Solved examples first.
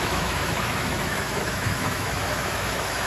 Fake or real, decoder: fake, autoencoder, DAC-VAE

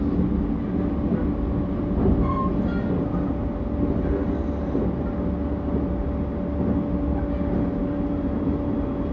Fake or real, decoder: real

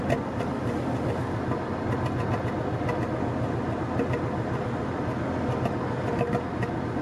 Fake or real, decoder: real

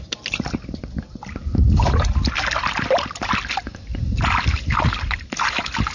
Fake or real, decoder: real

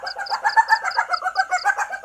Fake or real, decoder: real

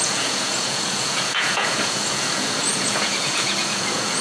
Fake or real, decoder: fake, vocoder, Vocos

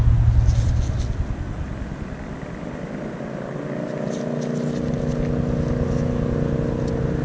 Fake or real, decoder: real